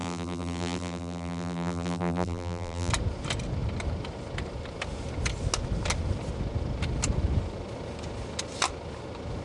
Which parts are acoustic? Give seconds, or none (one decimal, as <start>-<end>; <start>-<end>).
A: 2.9-9.4